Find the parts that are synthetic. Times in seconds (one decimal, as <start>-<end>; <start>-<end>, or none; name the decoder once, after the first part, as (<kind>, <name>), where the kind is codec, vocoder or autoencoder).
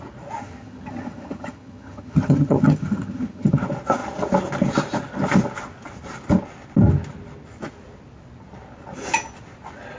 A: 0.4-3.6 (vocoder, HiFi-GAN)